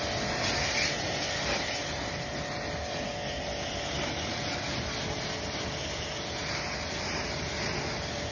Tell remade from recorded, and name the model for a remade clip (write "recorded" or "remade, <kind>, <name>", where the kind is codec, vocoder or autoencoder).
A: recorded